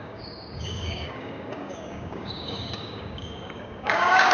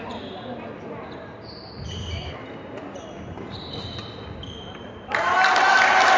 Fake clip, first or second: first